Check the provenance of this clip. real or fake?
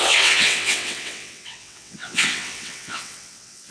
fake